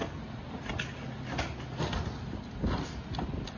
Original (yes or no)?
yes